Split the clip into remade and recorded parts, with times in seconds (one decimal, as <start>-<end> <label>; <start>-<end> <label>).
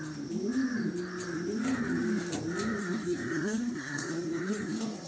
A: 0.0-2.8 recorded; 2.8-5.1 remade